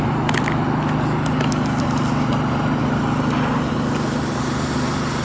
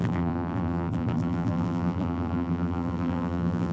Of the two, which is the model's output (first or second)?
second